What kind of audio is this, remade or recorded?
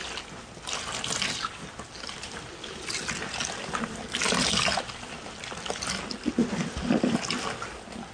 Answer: recorded